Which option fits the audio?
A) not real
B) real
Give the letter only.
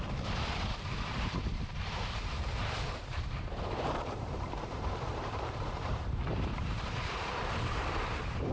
A